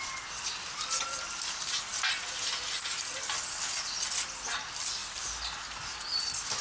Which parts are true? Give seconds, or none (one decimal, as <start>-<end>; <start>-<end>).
0.0-5.0; 5.6-6.6